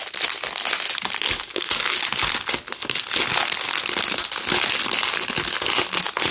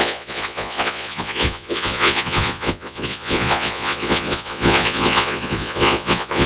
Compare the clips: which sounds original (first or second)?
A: first